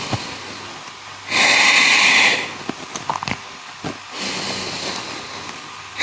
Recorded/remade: recorded